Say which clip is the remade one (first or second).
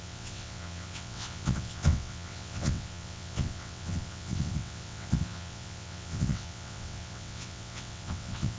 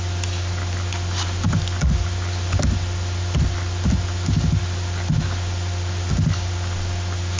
first